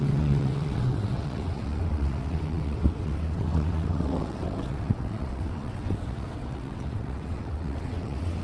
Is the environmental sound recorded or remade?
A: remade